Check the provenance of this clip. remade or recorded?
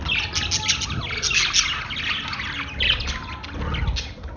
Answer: recorded